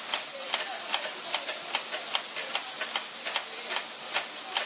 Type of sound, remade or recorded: recorded